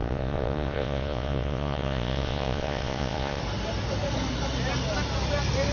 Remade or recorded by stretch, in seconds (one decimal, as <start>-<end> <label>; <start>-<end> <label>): 0.0-3.4 remade; 3.4-5.7 recorded